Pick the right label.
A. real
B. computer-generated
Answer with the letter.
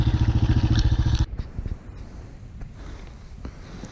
A